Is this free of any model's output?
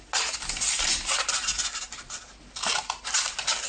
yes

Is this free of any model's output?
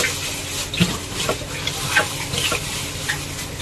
yes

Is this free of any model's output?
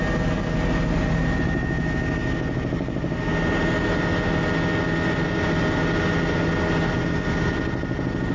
yes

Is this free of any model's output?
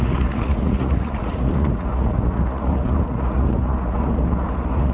no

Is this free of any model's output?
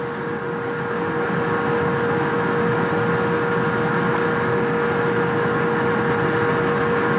yes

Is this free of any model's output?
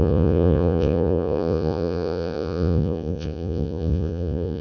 no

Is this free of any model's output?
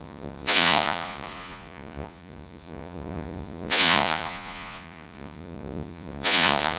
no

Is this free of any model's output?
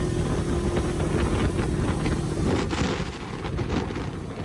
yes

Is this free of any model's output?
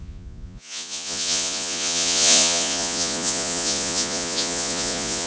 no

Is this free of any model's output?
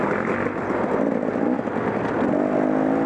yes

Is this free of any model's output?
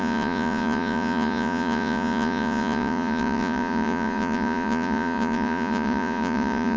no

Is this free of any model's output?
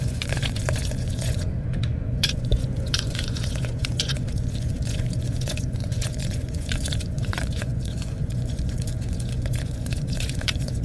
no